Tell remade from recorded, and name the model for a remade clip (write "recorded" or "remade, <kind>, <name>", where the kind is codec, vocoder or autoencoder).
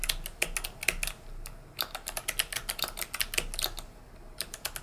recorded